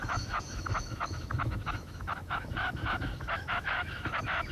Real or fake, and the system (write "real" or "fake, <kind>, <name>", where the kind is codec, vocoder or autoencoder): fake, autoencoder, DAC-VAE